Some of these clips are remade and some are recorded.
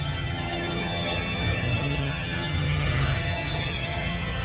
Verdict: remade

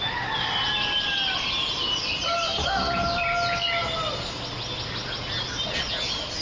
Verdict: recorded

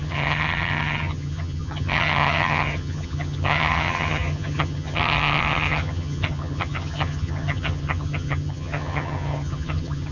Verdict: remade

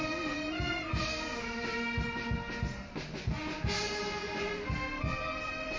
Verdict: recorded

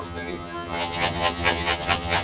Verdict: remade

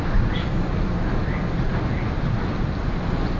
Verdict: recorded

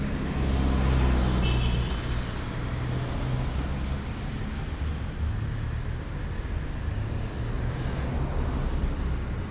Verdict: recorded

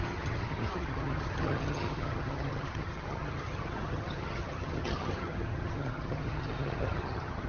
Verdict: remade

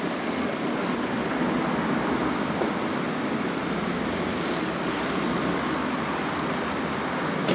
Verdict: recorded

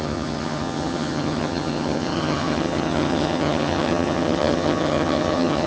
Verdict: remade